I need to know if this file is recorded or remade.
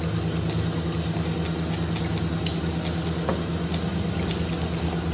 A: recorded